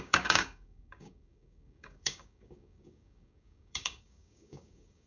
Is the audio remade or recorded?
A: remade